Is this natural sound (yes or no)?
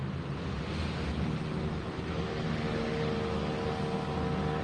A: yes